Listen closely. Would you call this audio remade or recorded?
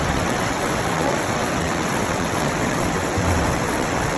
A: remade